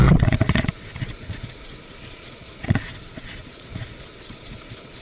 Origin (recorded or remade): remade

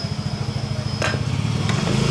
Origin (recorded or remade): recorded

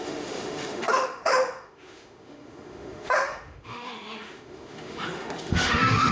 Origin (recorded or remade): remade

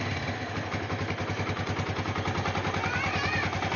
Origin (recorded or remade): recorded